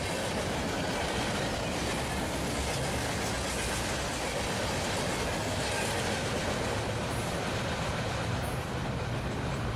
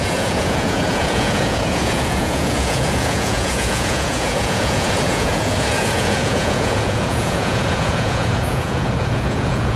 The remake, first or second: second